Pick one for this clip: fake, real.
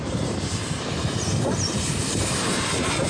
fake